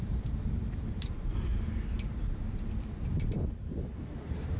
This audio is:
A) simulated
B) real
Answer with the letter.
A